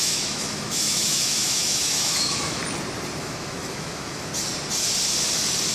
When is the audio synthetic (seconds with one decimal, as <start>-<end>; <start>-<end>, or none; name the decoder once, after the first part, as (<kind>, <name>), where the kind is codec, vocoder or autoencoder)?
0.0-2.6 (autoencoder, DAC-VAE); 3.2-4.3